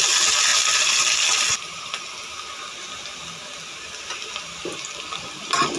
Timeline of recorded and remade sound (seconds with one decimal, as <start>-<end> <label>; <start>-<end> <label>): 0.0-0.5 recorded; 0.5-1.9 remade; 1.9-5.8 recorded